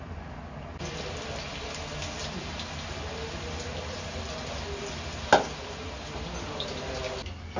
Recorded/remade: recorded